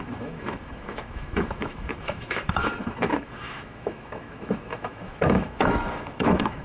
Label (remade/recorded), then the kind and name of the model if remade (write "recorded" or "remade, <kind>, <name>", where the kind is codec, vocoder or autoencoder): remade, autoencoder, DAC-VAE